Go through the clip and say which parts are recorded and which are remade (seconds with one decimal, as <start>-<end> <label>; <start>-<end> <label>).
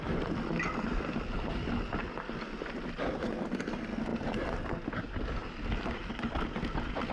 0.0-7.1 recorded